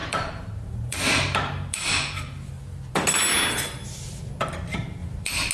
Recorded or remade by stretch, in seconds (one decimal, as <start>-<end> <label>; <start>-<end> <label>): 0.0-2.5 remade; 2.5-5.0 recorded; 5.0-5.5 remade